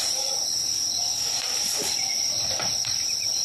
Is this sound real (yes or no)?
yes